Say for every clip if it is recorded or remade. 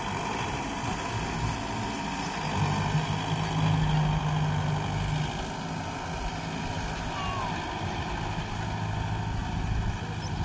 recorded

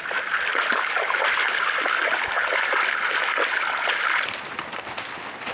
recorded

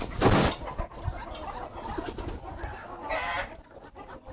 recorded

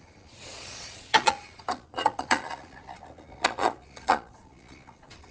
remade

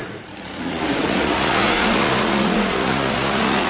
remade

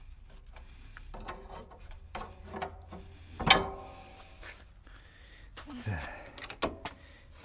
recorded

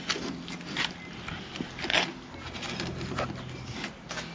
recorded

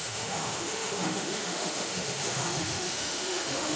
remade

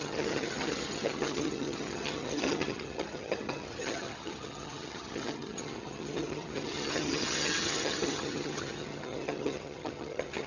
remade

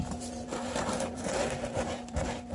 remade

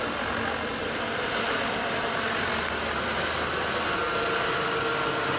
recorded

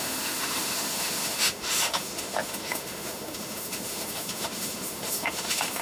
remade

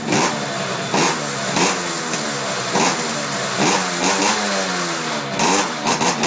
recorded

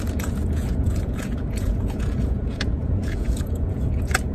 remade